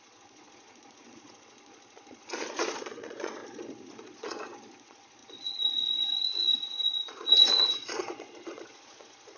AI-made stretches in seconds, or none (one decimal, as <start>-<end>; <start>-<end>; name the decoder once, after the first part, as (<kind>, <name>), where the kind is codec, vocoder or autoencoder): 0.0-3.4 (vocoder, Vocos); 3.9-9.4